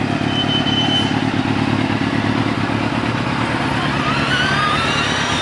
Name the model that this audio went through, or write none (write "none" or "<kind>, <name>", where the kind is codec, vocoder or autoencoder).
none